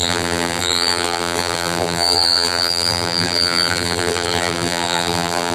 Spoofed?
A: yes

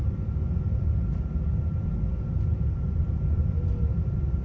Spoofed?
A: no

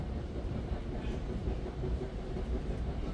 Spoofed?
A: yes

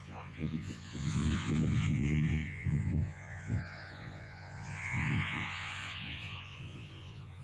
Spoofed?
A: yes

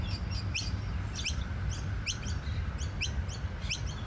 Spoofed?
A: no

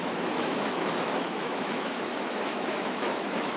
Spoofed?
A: yes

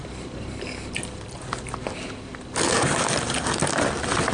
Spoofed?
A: no